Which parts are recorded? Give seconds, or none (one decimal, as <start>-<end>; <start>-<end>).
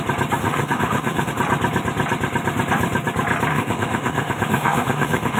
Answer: 0.0-0.4; 1.3-3.5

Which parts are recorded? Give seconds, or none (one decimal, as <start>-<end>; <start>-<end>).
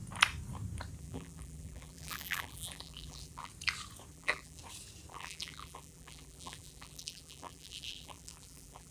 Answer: 0.0-1.0; 3.5-4.1; 4.6-5.1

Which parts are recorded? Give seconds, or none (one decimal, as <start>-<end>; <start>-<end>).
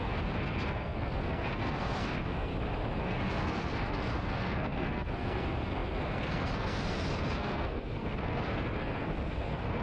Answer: 2.5-3.0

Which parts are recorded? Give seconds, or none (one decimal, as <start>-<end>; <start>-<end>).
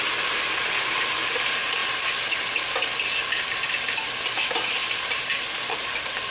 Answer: 0.0-4.8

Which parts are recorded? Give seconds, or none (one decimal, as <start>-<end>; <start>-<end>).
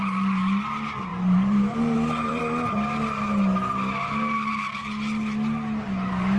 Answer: 0.0-1.1; 2.4-6.4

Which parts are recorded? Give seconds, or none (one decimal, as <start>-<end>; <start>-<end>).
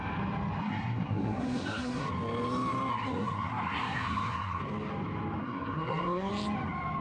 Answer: 0.0-0.6; 2.1-2.9; 4.6-5.4; 6.3-7.0